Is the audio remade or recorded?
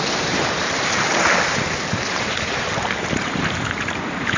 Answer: remade